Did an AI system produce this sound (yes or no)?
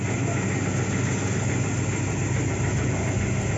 no